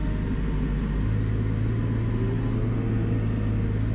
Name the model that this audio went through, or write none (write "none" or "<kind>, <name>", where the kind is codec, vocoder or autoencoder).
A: none